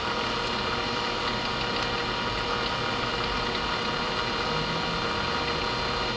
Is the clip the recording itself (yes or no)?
yes